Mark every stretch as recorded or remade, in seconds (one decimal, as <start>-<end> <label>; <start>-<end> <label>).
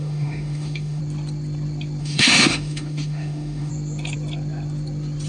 0.0-1.0 remade; 1.0-2.0 recorded; 2.0-3.7 remade; 3.7-5.3 recorded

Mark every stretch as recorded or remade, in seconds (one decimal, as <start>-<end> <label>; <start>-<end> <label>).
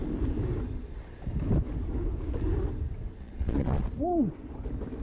0.0-3.1 recorded; 3.1-3.9 remade; 3.9-5.0 recorded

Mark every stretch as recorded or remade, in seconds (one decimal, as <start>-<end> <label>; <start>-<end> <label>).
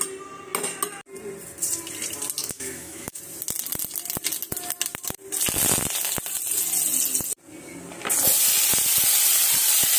0.0-2.4 recorded; 2.4-3.2 remade; 3.2-10.0 recorded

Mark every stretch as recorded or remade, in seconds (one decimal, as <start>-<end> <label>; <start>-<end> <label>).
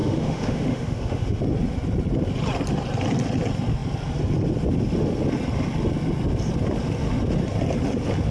0.0-1.4 remade; 1.4-8.3 recorded